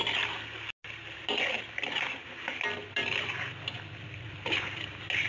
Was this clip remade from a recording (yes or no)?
no